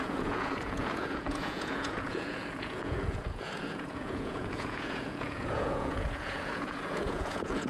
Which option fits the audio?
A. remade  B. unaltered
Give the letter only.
A